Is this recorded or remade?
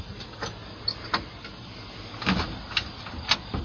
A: recorded